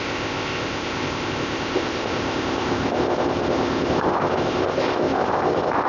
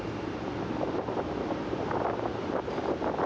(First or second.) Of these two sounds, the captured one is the second